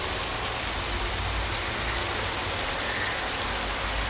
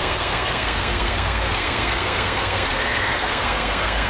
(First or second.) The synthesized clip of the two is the second